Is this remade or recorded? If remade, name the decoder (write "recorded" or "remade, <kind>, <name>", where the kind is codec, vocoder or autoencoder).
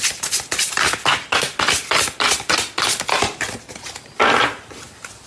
recorded